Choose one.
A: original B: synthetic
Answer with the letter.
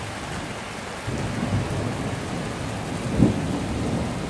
A